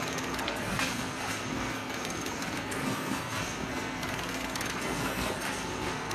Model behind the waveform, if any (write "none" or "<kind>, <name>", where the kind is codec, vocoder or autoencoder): codec, SNAC